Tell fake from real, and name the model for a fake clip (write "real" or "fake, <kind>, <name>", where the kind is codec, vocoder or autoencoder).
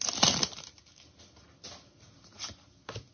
real